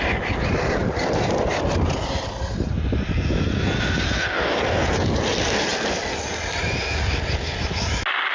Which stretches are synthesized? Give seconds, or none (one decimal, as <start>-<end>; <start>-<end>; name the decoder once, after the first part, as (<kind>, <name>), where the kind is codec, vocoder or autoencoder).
none